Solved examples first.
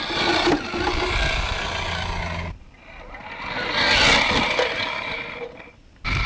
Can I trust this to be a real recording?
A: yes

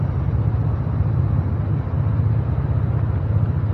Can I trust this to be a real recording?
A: yes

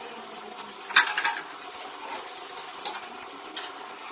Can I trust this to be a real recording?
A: yes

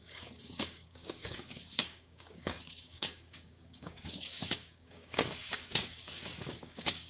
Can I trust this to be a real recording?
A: no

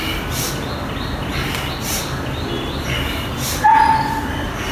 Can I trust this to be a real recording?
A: yes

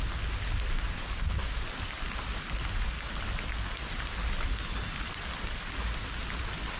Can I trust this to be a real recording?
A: yes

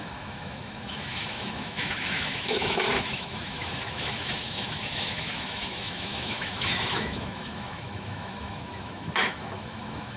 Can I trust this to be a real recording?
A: no